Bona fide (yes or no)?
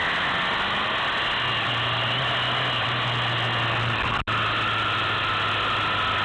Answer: yes